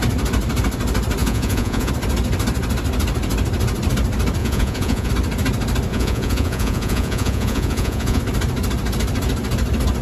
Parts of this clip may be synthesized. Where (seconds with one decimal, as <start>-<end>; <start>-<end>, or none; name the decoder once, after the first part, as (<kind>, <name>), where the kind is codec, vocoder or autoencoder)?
1.2-1.9 (vocoder, Vocos); 4.4-5.1; 5.9-8.2